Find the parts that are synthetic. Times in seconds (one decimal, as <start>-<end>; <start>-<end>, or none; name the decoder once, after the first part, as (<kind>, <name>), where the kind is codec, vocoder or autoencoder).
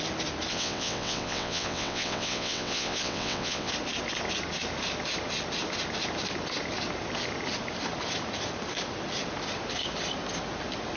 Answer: 0.5-3.7 (vocoder, WaveNeXt)